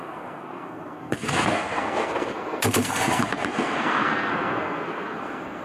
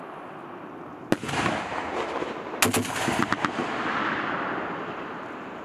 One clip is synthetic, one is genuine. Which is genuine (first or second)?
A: second